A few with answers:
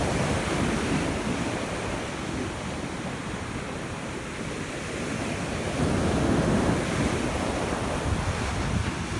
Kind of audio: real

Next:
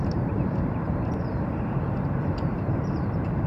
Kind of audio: fake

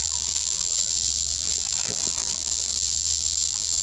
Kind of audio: fake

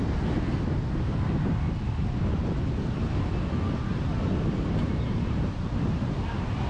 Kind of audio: real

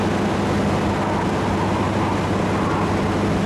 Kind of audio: real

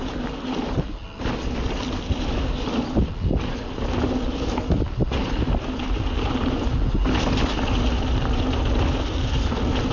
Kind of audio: real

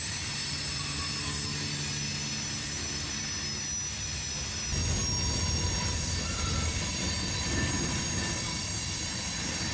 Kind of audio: real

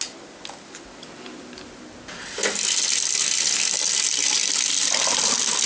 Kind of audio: real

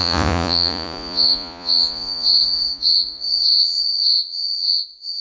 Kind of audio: fake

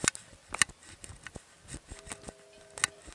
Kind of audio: real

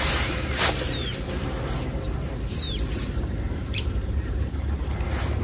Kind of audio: fake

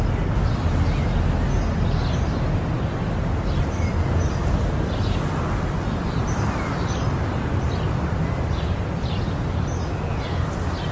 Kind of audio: real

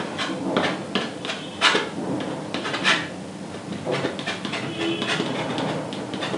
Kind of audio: real